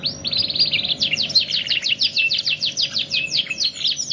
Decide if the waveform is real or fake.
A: real